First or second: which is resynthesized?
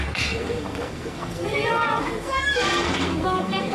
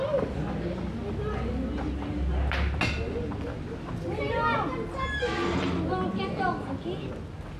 first